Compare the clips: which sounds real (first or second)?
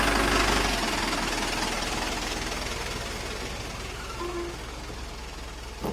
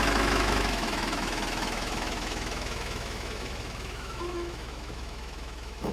first